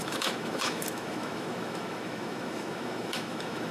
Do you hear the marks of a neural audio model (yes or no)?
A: yes